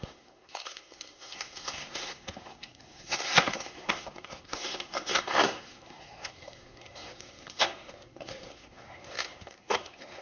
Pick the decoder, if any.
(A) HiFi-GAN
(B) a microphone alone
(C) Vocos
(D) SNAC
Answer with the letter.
D